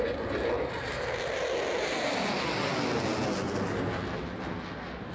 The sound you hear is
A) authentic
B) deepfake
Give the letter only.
A